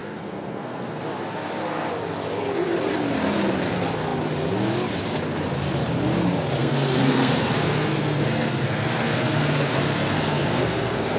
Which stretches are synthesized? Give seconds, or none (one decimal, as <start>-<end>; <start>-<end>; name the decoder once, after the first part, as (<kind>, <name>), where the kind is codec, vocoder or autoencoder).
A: 0.0-1.0 (codec, SNAC); 6.6-11.2